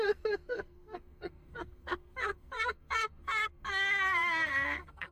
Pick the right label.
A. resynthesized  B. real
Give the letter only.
A